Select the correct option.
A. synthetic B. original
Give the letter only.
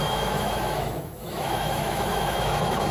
A